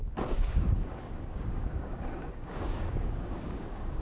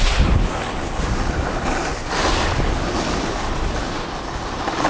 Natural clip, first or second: second